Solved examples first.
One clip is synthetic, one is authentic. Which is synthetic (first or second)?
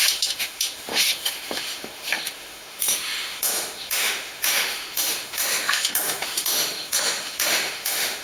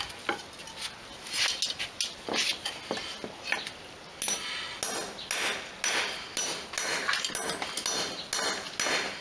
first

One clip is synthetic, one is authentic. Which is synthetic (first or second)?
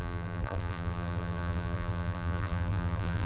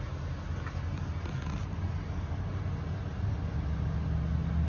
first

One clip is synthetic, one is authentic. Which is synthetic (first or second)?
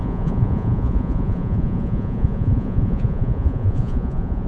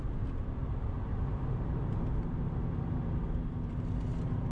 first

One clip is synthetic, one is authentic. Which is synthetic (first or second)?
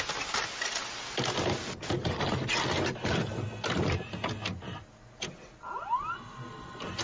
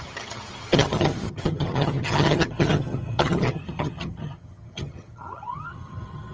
second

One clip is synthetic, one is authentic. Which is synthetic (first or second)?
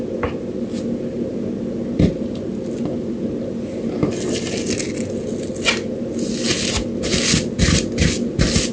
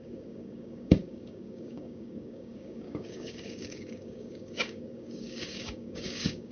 second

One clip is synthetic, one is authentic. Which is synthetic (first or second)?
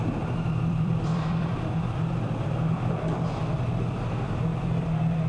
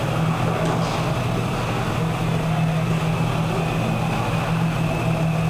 first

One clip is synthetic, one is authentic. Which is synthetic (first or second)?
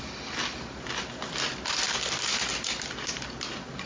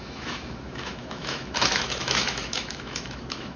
second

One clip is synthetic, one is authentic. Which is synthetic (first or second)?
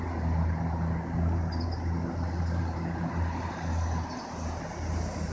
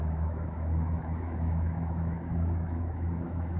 second